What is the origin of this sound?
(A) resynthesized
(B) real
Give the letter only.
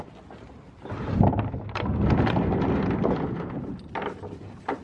B